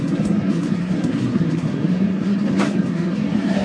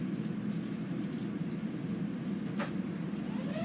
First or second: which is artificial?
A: first